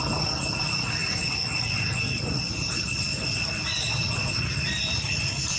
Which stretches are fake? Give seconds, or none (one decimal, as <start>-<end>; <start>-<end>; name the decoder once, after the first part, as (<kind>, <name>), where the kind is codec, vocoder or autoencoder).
none